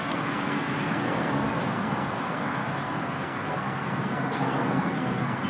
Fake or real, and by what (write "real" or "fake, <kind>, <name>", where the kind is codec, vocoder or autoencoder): fake, codec, SNAC